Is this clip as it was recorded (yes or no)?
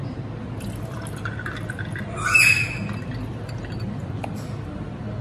yes